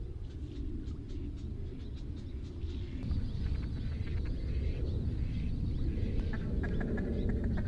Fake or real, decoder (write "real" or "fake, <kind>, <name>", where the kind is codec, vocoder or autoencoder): real